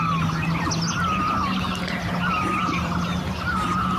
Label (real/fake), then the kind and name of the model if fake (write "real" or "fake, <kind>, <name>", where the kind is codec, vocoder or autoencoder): real